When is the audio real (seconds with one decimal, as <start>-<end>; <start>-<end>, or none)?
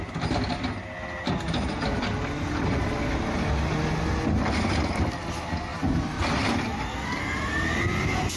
0.0-5.7; 6.2-8.4